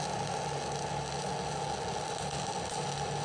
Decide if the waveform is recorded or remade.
recorded